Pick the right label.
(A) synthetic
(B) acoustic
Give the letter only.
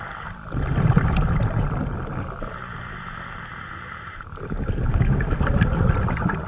B